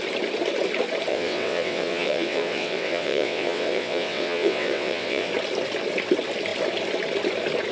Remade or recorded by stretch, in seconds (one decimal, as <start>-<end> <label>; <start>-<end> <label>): 0.0-1.1 recorded; 1.1-5.3 remade; 5.3-7.7 recorded